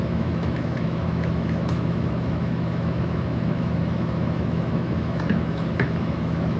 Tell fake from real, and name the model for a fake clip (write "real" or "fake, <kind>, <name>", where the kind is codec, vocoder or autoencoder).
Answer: fake, autoencoder, DAC-VAE